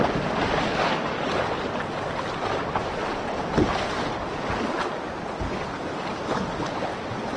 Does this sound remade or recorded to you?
recorded